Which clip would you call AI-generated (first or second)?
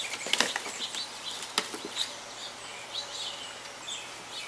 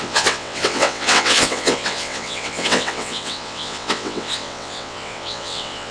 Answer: second